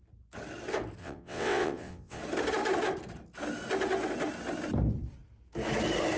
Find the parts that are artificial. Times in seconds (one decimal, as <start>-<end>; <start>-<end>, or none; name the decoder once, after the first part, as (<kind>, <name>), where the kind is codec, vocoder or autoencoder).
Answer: 1.0-2.2 (vocoder, WaveNeXt)

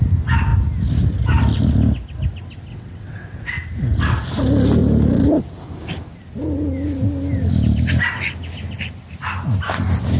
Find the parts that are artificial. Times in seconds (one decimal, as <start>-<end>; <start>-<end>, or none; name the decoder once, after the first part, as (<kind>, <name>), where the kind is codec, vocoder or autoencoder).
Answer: 2.7-3.5 (vocoder, WaveNeXt)

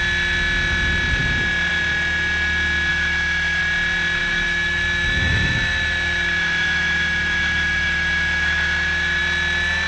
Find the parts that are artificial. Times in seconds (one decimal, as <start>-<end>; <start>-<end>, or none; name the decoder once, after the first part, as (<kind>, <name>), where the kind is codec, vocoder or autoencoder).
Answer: 2.9-3.6 (autoencoder, DAC-VAE); 4.2-9.2